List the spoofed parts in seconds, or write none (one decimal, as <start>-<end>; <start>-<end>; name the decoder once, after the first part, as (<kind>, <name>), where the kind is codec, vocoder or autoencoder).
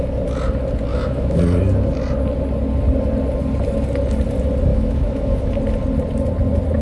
0.9-1.4 (autoencoder, DAC-VAE); 4.7-5.5